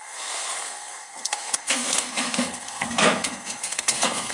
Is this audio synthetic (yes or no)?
yes